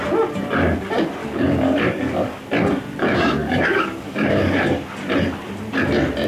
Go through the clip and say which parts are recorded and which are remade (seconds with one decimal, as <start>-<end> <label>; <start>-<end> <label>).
0.0-1.2 recorded; 1.2-2.4 remade; 2.4-3.4 recorded; 3.4-4.6 remade; 4.6-6.3 recorded